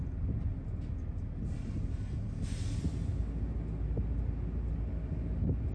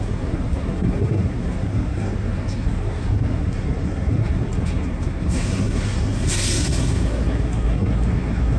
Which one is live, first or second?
first